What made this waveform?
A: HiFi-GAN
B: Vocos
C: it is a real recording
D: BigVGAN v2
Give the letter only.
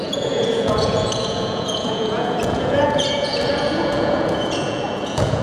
B